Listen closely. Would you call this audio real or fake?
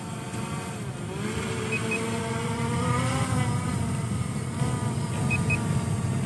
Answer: real